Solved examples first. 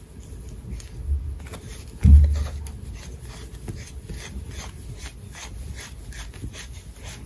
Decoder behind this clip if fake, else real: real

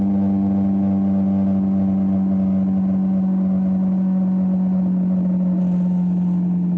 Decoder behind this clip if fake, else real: real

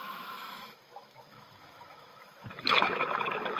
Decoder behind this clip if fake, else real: fake, autoencoder, DAC-VAE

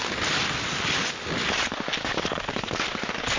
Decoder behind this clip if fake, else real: real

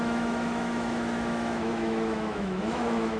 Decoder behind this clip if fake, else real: fake, autoencoder, DAC-VAE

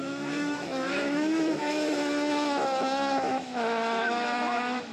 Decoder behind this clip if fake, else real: fake, autoencoder, DAC-VAE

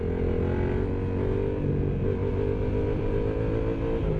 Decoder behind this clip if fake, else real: real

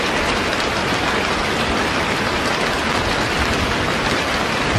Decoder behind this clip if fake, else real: real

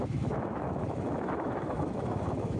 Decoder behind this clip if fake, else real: fake, autoencoder, DAC-VAE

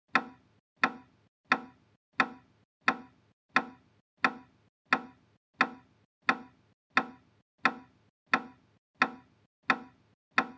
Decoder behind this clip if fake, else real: real